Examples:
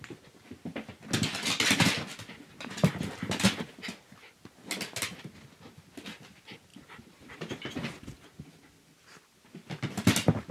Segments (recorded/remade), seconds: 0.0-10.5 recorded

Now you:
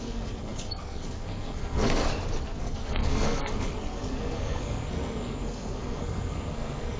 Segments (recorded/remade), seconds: 0.0-2.0 remade; 2.0-2.6 recorded; 2.6-7.0 remade

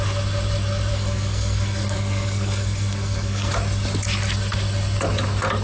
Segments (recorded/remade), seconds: 0.0-0.9 recorded; 0.9-3.5 remade; 3.5-5.6 recorded

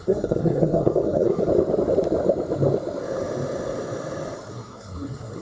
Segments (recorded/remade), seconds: 0.0-1.5 remade; 1.5-4.5 recorded; 4.5-5.4 remade

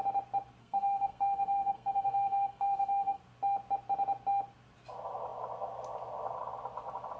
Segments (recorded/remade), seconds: 0.0-0.6 recorded; 0.6-3.2 remade; 3.2-7.2 recorded

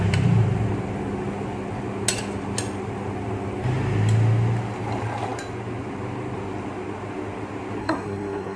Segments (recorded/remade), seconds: 0.0-7.8 recorded; 7.8-8.6 remade

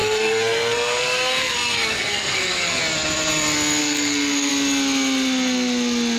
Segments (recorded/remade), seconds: 0.0-2.8 remade; 2.8-3.8 recorded; 3.8-4.5 remade; 4.5-6.2 recorded